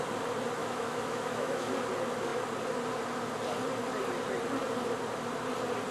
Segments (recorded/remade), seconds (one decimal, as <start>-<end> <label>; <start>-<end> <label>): 0.0-0.6 recorded; 0.6-1.7 remade; 1.7-5.9 recorded